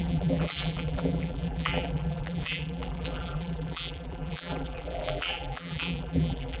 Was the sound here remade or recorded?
remade